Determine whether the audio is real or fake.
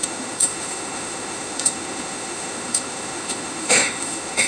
fake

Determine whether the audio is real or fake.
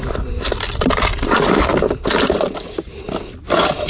real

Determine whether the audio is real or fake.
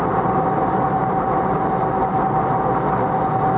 real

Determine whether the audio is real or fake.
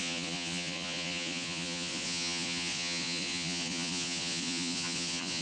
fake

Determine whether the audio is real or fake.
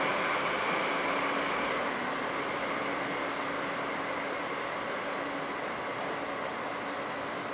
real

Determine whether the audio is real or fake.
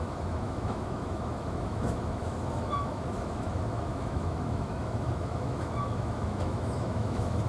fake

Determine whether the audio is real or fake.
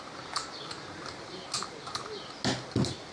real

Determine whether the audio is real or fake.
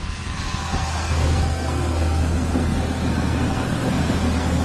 fake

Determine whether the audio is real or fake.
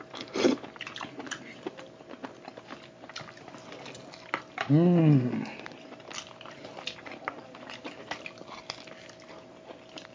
real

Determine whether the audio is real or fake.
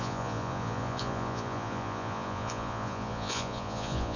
fake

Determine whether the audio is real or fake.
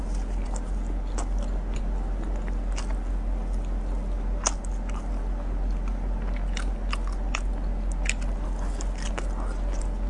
real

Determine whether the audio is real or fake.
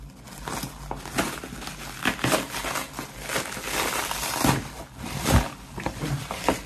real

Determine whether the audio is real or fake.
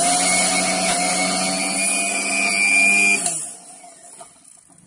real